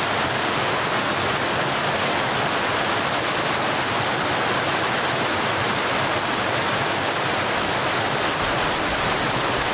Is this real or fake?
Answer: real